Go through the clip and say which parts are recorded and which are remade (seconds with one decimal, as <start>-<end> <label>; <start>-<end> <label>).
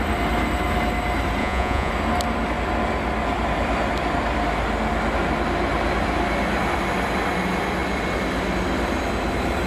0.0-1.4 recorded; 1.4-1.9 remade; 1.9-9.7 recorded